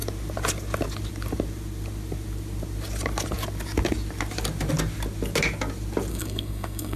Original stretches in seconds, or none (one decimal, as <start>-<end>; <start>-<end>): 0.0-6.1